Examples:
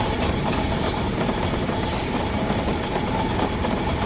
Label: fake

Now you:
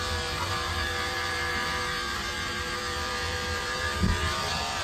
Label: fake